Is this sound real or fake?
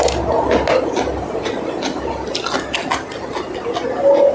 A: real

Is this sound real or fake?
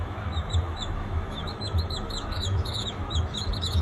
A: fake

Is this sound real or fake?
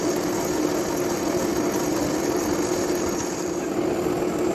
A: real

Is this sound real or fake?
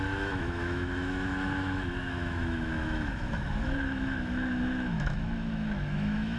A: fake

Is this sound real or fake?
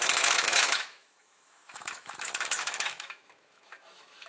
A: fake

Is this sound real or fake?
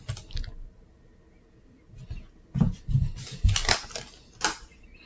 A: real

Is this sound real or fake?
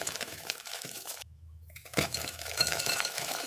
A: fake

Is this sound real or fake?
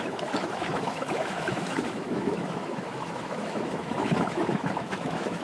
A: fake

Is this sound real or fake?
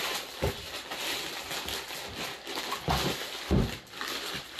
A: real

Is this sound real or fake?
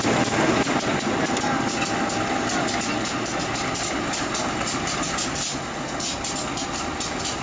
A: real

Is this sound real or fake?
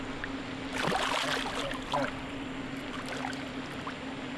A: real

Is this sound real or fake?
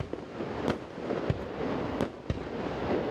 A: real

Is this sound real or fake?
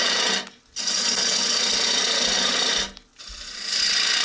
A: real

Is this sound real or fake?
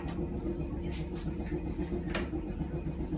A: real